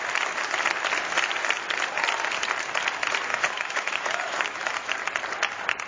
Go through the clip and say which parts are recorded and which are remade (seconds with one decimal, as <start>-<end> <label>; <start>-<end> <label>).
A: 0.0-3.3 recorded; 3.3-4.9 remade; 4.9-5.9 recorded

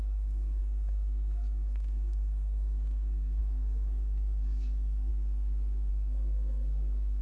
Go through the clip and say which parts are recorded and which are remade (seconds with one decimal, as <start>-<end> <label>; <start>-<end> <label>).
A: 0.0-5.1 remade; 5.1-5.9 recorded; 5.9-7.2 remade